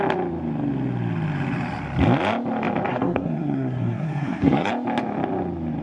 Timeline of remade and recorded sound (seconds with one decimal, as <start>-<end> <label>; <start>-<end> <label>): 0.0-2.9 recorded; 2.9-4.7 remade; 4.7-5.8 recorded